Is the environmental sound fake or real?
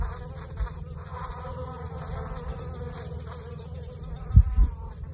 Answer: real